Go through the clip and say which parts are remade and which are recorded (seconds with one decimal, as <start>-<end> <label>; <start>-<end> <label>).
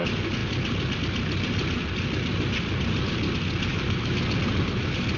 0.0-3.7 recorded; 3.7-4.2 remade; 4.2-5.2 recorded